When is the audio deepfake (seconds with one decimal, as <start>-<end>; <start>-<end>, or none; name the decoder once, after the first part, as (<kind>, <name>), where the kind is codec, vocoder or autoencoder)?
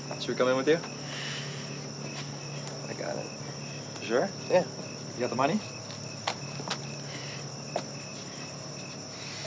none